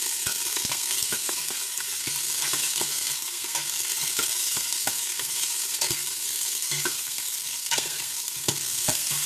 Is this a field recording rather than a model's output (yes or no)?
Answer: no